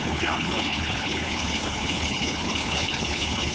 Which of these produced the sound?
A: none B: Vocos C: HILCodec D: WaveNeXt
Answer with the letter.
C